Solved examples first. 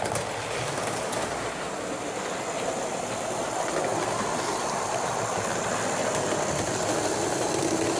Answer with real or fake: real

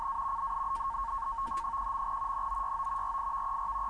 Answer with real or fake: real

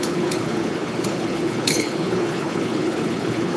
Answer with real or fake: fake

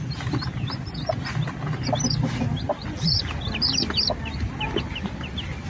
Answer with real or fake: real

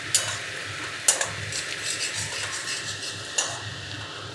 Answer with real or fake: real